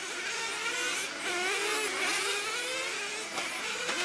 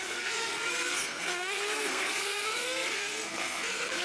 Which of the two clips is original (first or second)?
first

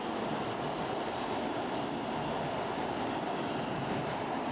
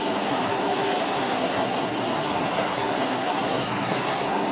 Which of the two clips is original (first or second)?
first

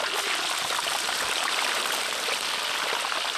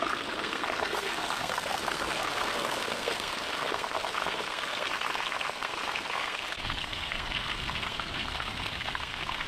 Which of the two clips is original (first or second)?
first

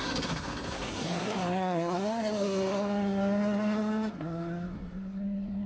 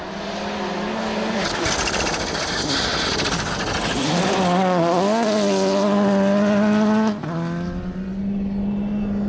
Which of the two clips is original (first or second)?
second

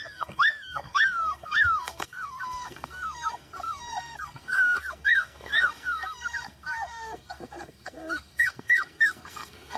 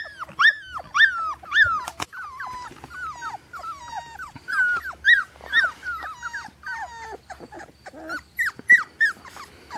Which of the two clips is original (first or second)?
second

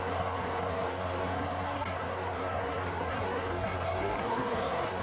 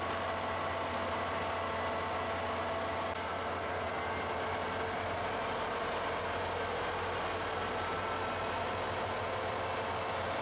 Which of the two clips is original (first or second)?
second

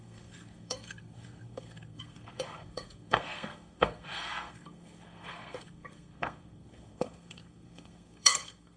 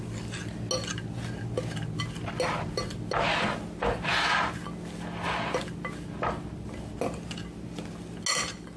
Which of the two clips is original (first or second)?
second